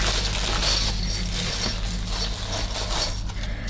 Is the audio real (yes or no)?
yes